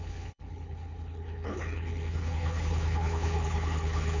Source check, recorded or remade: remade